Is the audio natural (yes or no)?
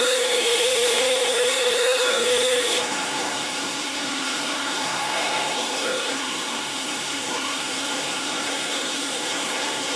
no